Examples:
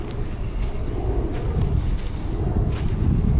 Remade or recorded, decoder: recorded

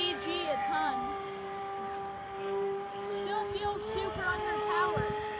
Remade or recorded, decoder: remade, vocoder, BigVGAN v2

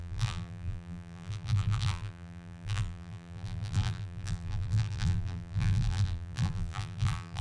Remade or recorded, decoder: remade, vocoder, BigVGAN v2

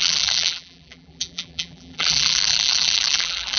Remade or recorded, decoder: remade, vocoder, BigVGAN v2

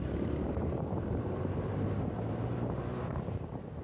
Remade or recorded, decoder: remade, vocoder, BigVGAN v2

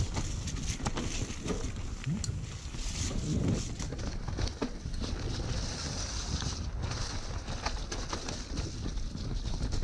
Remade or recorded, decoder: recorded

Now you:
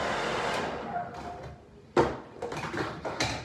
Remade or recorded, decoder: recorded